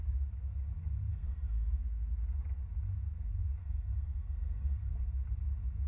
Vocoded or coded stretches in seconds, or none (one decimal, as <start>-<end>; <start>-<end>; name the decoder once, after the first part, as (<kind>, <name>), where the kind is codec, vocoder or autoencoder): 1.1-1.8 (codec, SNAC); 3.6-4.9